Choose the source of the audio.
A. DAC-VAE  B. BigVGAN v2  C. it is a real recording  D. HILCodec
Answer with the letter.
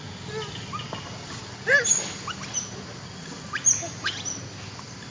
C